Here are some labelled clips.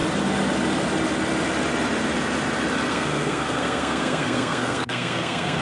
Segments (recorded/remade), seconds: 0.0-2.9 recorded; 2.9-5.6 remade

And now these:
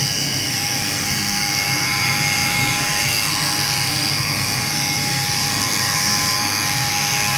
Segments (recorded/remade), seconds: 0.0-7.4 remade